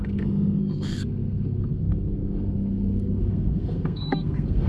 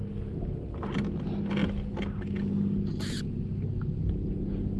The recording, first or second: second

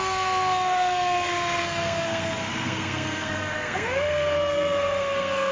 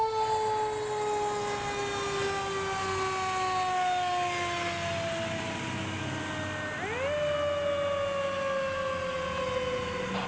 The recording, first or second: second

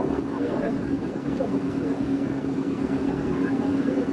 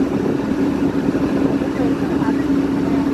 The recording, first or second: second